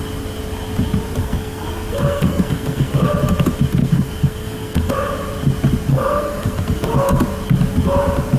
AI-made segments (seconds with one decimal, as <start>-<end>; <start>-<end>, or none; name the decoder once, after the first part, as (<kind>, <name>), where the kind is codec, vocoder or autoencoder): 1.2-3.1 (codec, SNAC); 3.8-4.9; 5.9-7.2